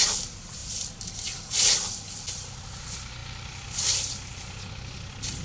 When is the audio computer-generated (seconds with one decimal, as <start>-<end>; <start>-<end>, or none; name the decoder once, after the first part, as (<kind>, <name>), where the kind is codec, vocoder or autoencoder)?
0.6-1.5 (vocoder, BigVGAN v2)